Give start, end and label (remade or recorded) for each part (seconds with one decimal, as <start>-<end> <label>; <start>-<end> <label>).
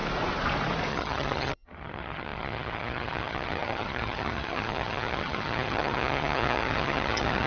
0.0-0.9 recorded; 0.9-7.5 remade